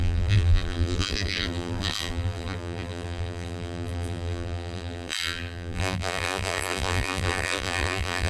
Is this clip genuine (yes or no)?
no